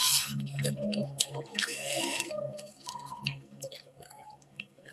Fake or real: fake